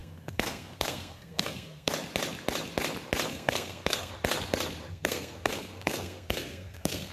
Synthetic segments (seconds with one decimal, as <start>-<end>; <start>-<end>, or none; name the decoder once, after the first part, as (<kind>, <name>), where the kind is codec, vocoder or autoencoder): 0.0-1.9 (codec, SNAC); 3.3-4.1; 4.9-7.1